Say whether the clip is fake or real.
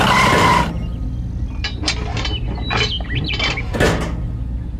real